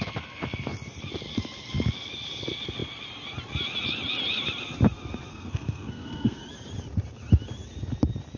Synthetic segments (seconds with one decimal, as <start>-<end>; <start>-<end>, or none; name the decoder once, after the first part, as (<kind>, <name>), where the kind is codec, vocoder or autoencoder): 5.3-6.4 (codec, SNAC)